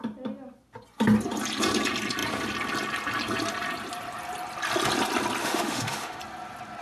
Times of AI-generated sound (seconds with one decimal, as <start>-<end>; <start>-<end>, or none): 5.4-6.2